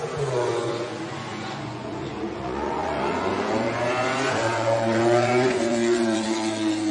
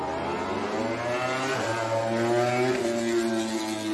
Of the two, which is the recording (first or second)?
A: second